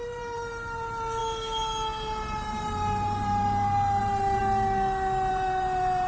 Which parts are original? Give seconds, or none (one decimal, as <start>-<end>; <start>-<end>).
1.2-4.0; 4.4-5.3